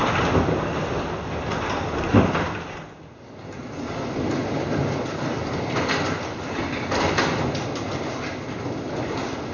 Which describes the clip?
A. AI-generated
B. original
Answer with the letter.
B